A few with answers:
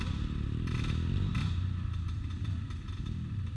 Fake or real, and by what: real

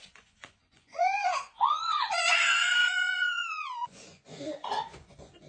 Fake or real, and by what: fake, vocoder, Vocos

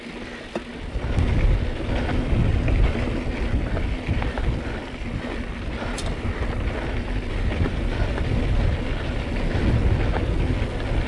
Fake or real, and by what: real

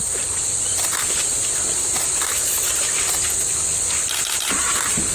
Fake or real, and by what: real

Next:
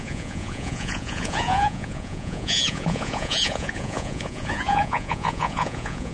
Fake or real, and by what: fake, vocoder, Vocos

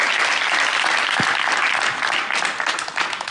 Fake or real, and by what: real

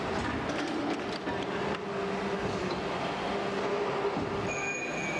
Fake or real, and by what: real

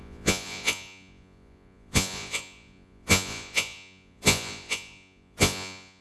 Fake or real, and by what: fake, vocoder, Vocos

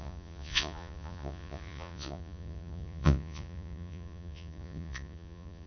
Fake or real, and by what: fake, vocoder, Vocos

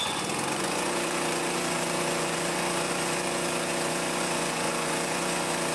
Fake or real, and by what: fake, vocoder, Vocos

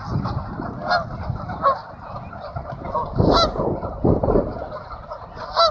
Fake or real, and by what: real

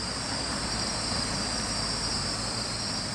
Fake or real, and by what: real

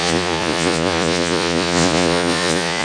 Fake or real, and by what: fake, vocoder, Vocos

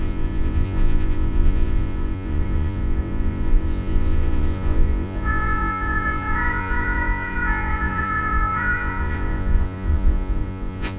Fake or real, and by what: fake, vocoder, Vocos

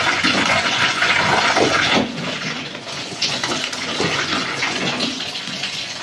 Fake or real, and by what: fake, vocoder, Vocos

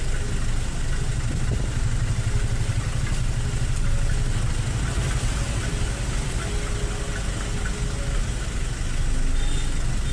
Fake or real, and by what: real